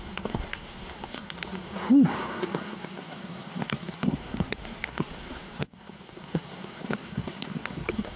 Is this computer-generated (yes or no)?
yes